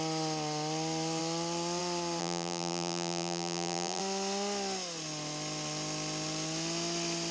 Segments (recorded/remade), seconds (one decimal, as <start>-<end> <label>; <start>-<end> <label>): 0.0-2.2 recorded; 2.2-4.0 remade; 4.0-7.3 recorded